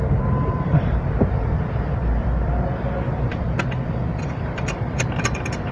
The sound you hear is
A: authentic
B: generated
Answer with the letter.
B